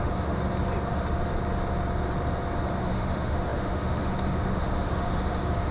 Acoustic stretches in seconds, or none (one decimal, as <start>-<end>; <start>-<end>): 0.4-2.8